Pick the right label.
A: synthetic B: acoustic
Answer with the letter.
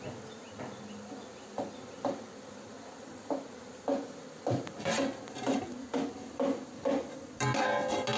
B